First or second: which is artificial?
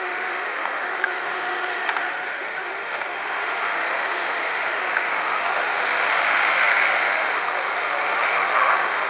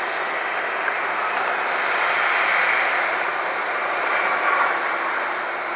first